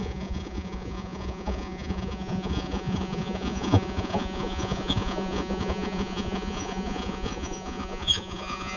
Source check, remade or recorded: remade